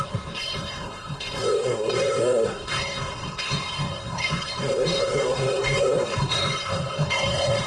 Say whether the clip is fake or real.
fake